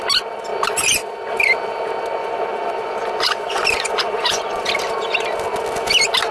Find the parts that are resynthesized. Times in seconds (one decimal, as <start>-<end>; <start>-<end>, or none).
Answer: 2.2-4.7